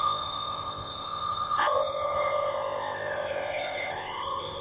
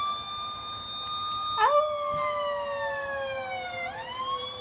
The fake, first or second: first